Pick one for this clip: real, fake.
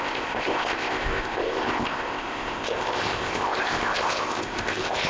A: fake